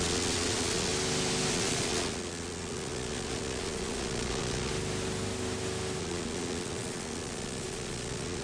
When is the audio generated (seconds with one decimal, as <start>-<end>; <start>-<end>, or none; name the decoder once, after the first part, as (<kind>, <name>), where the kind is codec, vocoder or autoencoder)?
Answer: 0.0-0.9 (vocoder, Vocos); 1.5-4.7; 6.0-8.4